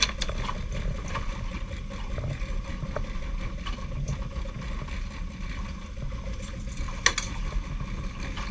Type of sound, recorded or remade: recorded